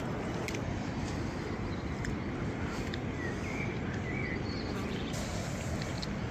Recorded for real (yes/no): yes